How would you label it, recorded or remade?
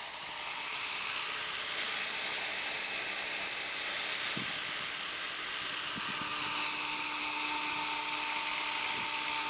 recorded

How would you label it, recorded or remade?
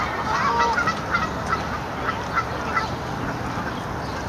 recorded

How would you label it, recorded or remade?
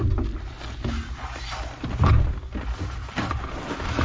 recorded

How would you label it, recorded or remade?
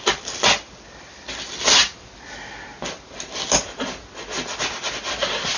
recorded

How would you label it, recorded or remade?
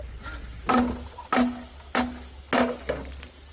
recorded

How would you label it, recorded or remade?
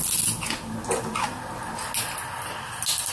recorded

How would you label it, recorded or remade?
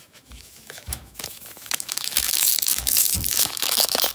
remade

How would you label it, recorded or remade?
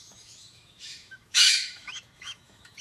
remade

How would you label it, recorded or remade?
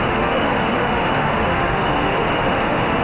remade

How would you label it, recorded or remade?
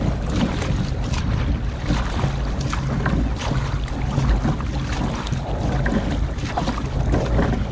recorded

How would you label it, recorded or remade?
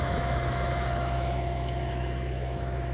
remade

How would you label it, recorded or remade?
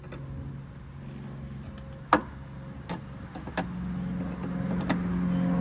recorded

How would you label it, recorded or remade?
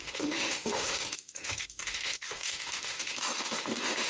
remade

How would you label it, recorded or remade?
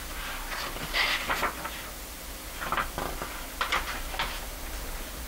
recorded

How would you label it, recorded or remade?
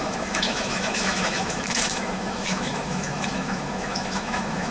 remade